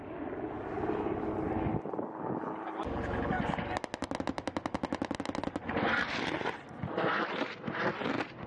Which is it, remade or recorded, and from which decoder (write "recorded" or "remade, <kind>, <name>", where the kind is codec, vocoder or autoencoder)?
recorded